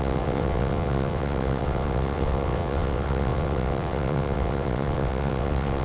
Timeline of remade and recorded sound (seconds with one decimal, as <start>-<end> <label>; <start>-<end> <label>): 0.0-5.8 remade